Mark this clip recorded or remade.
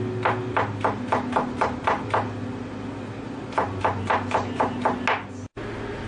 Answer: recorded